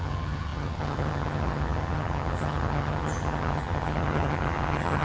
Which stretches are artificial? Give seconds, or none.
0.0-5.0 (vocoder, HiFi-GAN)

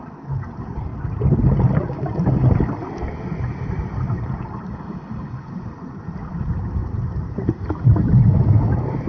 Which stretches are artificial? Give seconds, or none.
none

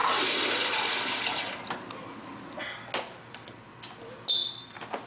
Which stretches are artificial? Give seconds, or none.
none

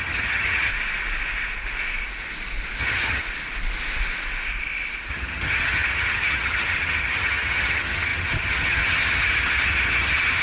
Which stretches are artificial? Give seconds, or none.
0.0-0.7 (vocoder, HiFi-GAN); 2.8-3.2; 5.1-10.4

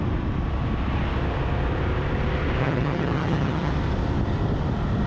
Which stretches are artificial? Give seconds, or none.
2.6-3.7 (vocoder, HiFi-GAN)

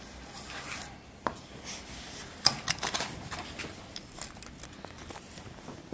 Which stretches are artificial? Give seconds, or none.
none

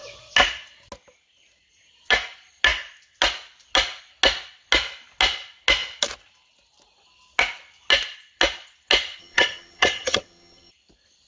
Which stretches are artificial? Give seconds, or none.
9.2-10.7 (vocoder, HiFi-GAN)

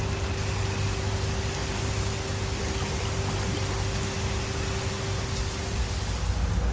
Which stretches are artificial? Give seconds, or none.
none